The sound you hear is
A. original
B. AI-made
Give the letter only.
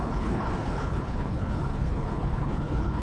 B